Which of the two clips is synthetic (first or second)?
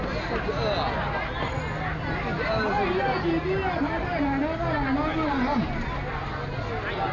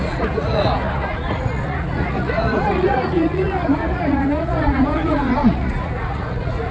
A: second